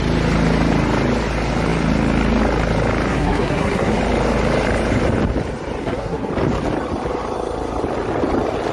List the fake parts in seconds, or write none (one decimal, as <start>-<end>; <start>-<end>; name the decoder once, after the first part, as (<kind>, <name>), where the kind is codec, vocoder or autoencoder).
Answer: 3.1-4.0 (codec, SNAC); 5.8-6.3